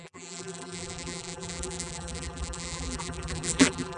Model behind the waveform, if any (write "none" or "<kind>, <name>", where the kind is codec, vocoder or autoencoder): vocoder, BigVGAN v2